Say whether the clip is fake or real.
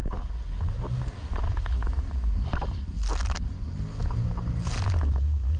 real